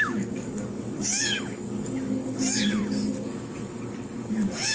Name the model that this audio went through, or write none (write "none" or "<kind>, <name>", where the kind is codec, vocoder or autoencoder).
codec, DAC